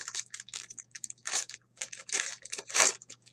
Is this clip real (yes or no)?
no